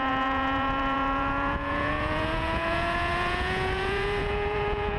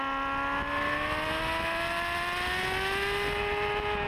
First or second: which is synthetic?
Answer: first